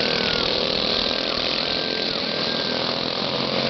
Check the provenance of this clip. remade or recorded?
recorded